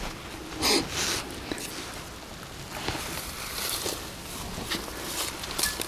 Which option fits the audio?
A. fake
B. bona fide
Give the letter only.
B